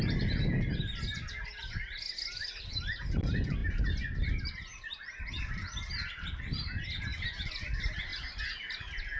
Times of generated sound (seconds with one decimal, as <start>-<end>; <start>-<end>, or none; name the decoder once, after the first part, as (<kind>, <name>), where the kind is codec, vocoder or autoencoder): none

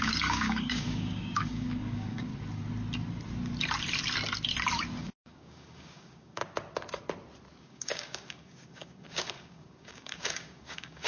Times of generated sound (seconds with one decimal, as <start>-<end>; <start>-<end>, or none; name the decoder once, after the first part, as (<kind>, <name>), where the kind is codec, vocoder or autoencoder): 0.0-2.3 (codec, DAC); 5.0-6.4; 7.6-11.1

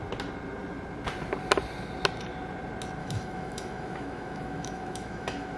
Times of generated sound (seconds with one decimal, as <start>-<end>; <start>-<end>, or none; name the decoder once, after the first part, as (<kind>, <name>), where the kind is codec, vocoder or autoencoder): 3.0-5.6 (autoencoder, DAC-VAE)